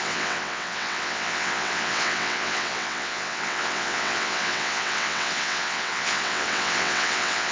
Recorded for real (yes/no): no